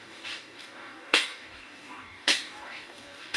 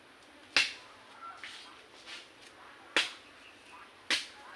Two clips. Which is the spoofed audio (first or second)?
first